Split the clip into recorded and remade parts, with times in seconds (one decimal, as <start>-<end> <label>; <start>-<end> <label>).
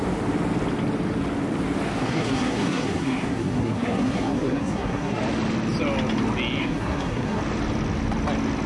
0.0-2.0 recorded; 2.0-5.2 remade; 5.2-6.6 recorded; 6.6-7.4 remade; 7.4-8.7 recorded